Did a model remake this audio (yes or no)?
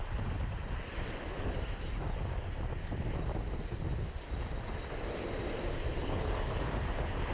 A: no